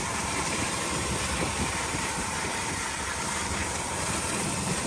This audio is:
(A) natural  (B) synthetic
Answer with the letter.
B